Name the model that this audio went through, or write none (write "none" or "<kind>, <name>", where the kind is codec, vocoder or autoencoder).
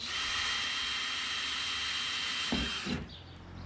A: none